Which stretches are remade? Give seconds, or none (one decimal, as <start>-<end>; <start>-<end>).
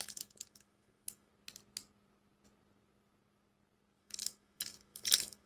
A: 0.0-1.3; 4.0-5.5